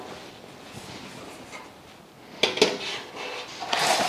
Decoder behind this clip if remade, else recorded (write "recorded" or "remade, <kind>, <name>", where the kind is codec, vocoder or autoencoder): recorded